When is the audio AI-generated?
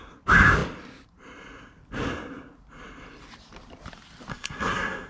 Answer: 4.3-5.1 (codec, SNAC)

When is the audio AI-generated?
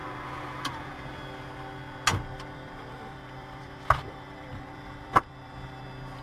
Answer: 2.1-5.8 (vocoder, BigVGAN v2)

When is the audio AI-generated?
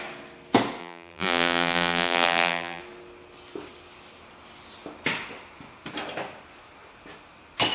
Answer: 0.8-2.8 (vocoder, BigVGAN v2)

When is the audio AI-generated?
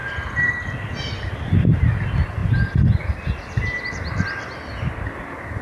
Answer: none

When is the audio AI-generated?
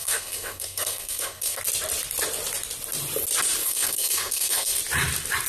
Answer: 0.0-1.6 (codec, SNAC); 3.6-4.8